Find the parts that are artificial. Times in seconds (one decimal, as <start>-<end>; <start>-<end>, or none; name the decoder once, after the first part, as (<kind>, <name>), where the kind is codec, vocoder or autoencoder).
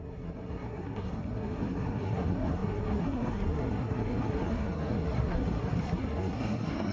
0.0-6.9 (codec, SNAC)